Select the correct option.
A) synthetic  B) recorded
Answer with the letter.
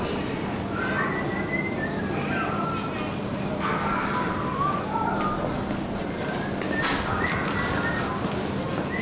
B